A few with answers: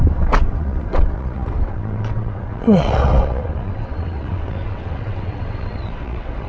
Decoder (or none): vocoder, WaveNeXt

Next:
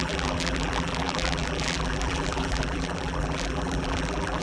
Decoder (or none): vocoder, BigVGAN v2